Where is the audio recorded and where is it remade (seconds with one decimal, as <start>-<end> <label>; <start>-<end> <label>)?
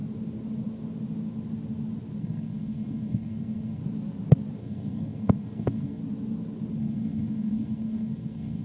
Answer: 0.0-2.2 recorded; 2.2-3.8 remade; 3.8-4.6 recorded; 4.6-6.0 remade; 6.0-6.8 recorded; 6.8-8.6 remade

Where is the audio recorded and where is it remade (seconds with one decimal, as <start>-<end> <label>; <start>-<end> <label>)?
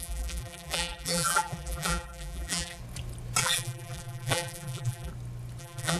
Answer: 0.0-2.8 remade; 2.8-3.4 recorded; 3.4-5.1 remade; 5.1-5.6 recorded; 5.6-6.0 remade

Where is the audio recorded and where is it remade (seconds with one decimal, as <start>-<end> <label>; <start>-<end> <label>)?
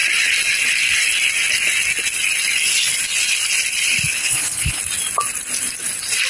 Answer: 0.0-4.2 recorded; 4.2-4.8 remade; 4.8-6.3 recorded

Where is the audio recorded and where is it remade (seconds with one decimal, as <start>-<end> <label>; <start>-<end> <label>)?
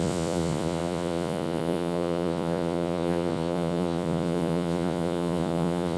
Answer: 0.0-6.0 remade